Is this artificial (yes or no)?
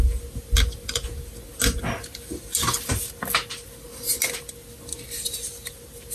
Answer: no